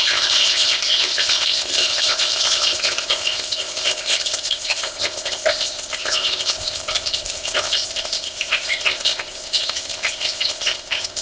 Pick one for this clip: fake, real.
fake